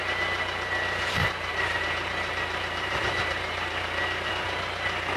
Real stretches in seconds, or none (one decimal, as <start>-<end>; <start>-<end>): 0.0-1.2; 4.3-5.2